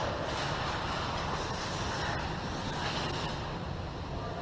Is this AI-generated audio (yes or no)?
no